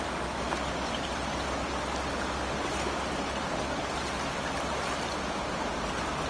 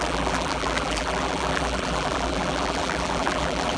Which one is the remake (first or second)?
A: second